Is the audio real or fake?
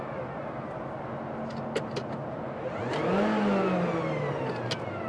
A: real